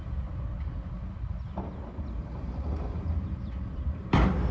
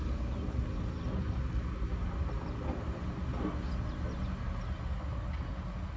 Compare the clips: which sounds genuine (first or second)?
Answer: second